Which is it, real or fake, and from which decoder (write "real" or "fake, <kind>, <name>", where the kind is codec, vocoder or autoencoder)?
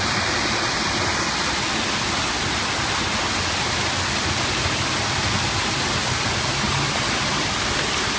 real